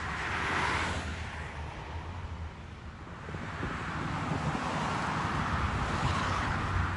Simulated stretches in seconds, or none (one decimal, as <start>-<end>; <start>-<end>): 6.0-6.6